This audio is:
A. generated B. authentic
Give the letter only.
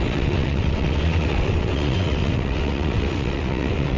A